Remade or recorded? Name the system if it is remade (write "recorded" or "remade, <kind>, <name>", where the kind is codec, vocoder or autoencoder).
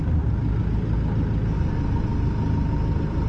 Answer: recorded